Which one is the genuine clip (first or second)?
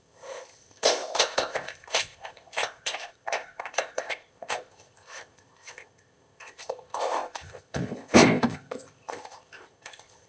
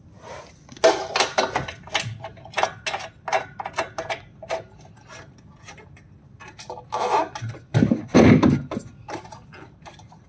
second